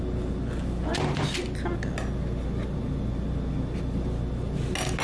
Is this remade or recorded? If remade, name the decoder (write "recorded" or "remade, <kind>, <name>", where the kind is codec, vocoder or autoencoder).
recorded